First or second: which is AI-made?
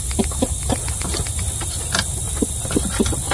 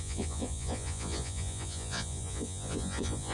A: second